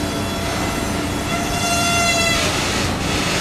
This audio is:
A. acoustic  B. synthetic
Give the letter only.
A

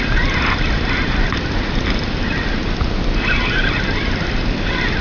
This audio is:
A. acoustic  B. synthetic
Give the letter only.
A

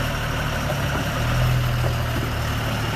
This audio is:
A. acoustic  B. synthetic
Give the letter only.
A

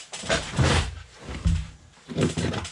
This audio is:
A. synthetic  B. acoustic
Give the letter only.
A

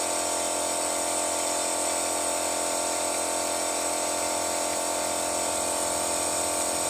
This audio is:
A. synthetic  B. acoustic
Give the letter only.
A